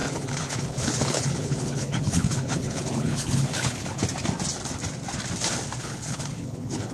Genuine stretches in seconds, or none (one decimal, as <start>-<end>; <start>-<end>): 4.0-5.8